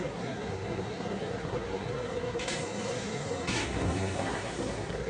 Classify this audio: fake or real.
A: fake